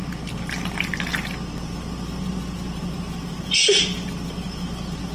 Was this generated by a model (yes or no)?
no